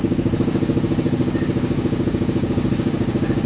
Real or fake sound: fake